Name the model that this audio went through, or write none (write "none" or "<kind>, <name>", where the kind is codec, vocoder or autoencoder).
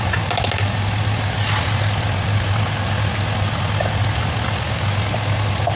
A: none